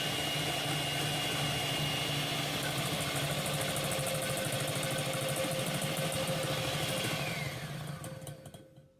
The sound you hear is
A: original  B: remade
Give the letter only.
A